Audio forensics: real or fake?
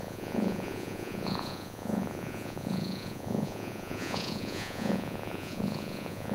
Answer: fake